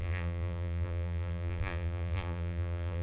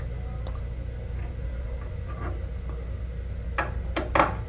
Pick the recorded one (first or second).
second